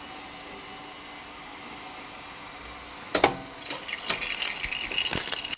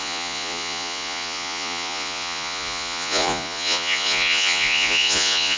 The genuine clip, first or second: first